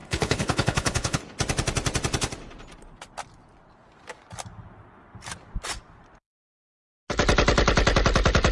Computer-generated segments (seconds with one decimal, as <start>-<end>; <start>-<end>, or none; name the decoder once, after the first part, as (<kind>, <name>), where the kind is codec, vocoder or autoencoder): 0.0-1.2 (codec, HILCodec)